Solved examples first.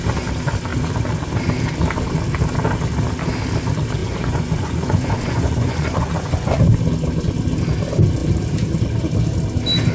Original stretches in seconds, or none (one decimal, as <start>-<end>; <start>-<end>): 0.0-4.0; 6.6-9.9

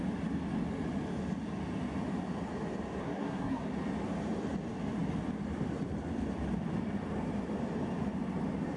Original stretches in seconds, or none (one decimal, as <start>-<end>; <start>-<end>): 0.0-3.0; 3.6-8.8

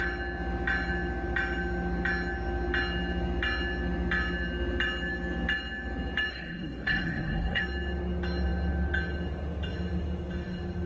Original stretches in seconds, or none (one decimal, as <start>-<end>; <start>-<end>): 0.0-6.3; 7.6-10.9

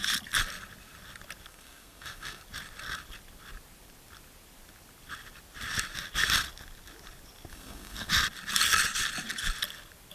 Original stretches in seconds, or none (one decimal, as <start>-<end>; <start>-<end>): 0.0-1.5; 2.4-7.5; 8.1-10.1

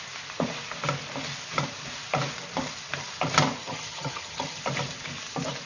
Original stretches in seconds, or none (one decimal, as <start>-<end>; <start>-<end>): 0.0-3.6; 4.6-5.7

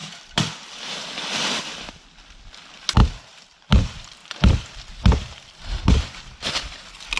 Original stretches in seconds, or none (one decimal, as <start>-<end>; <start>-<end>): 1.1-3.0; 3.7-7.2